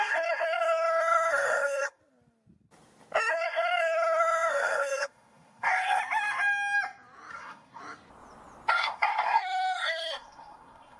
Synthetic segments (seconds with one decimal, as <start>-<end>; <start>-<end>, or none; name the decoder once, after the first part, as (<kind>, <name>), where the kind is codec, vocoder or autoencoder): 0.0-2.0 (codec, SNAC); 3.3-6.0; 7.3-7.8; 8.7-11.0